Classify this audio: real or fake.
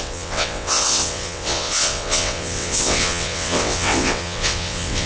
fake